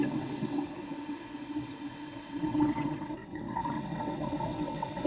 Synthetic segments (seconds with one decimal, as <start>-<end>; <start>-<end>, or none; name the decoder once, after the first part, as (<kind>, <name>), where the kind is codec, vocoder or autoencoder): 0.0-5.1 (vocoder, WaveNeXt)